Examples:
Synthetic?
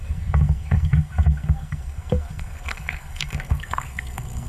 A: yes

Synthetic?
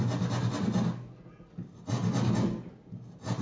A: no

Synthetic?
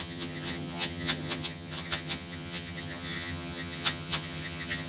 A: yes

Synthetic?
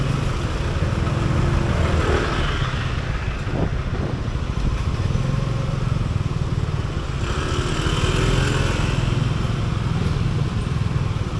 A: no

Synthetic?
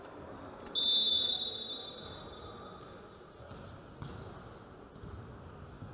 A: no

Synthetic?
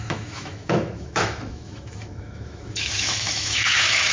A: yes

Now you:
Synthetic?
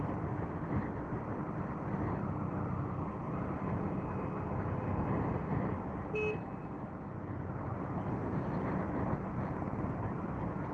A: no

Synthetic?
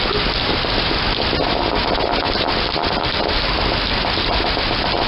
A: no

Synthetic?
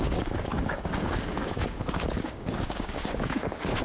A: yes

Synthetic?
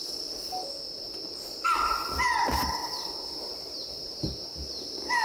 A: no